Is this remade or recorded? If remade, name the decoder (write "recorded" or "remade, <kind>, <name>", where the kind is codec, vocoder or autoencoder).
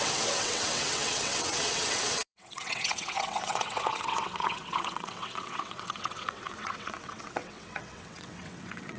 remade, vocoder, WaveNeXt